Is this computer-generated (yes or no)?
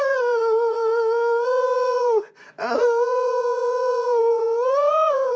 yes